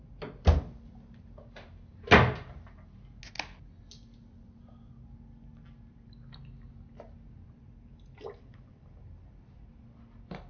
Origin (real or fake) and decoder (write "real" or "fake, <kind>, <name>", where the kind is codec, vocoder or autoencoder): real